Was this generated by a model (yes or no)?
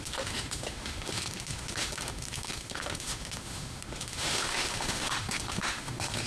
yes